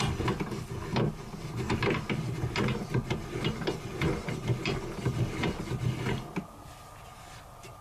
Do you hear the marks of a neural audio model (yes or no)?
no